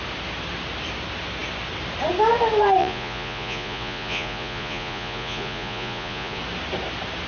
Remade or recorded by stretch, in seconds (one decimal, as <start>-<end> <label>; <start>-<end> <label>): 0.0-2.8 recorded; 2.8-6.4 remade; 6.4-7.3 recorded